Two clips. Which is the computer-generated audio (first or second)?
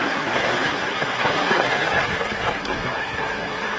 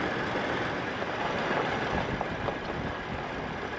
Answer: first